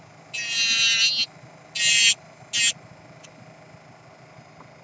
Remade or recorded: recorded